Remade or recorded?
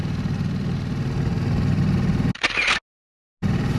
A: recorded